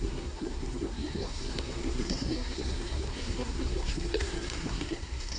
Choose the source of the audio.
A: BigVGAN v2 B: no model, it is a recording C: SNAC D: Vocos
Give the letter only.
C